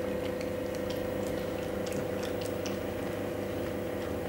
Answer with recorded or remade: recorded